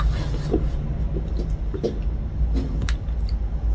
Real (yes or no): yes